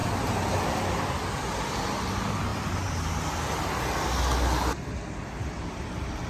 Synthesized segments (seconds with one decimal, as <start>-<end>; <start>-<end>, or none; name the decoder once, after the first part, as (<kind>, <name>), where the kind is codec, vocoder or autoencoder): none